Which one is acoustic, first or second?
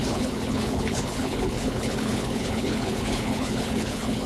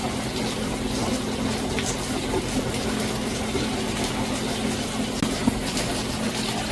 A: second